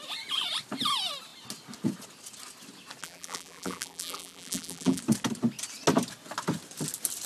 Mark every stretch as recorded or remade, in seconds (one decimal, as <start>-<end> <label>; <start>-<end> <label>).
0.0-3.0 recorded; 3.0-5.0 remade; 5.0-7.3 recorded

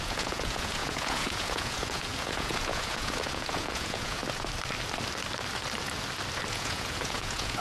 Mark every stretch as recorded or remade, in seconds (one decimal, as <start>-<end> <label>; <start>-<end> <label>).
0.0-4.2 remade; 4.2-6.5 recorded; 6.5-7.6 remade

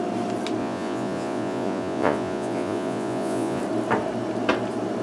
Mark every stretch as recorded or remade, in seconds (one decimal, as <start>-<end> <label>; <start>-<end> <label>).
0.0-0.6 recorded; 0.6-3.6 remade; 3.6-5.0 recorded

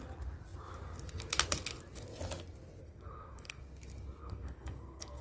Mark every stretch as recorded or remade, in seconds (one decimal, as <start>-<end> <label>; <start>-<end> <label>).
0.0-2.8 recorded; 2.8-3.6 remade; 3.6-4.2 recorded; 4.2-5.2 remade